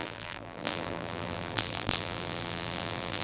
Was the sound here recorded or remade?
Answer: remade